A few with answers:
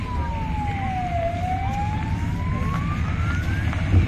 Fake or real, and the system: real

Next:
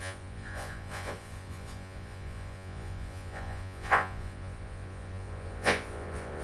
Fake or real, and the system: fake, vocoder, Vocos